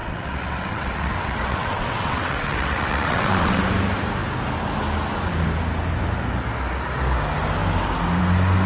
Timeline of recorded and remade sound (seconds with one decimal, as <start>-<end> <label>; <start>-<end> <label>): 0.0-3.6 remade; 3.6-8.7 recorded